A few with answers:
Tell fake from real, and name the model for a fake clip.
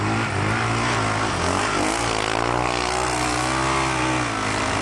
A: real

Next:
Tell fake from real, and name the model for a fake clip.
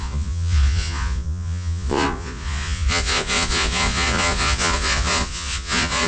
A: fake, vocoder, Vocos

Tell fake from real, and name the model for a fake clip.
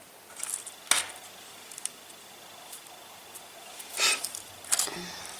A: real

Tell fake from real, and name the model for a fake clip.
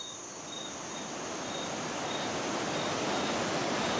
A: real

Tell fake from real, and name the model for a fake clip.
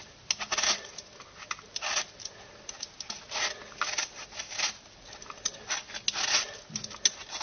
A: real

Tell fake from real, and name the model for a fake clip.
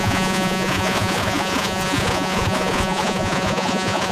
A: fake, vocoder, Vocos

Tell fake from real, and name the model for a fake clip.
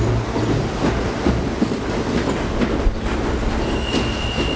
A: real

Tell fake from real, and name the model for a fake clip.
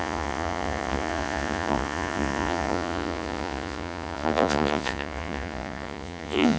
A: fake, vocoder, Vocos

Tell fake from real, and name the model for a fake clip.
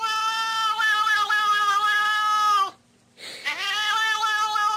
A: real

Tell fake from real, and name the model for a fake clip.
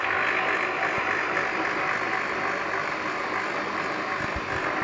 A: real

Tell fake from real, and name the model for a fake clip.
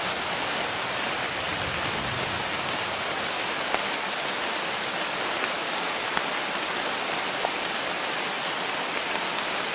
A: real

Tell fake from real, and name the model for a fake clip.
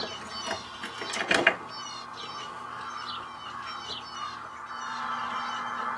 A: real